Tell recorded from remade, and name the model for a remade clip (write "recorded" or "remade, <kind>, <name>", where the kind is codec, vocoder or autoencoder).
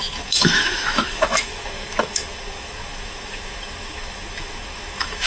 remade, autoencoder, DAC-VAE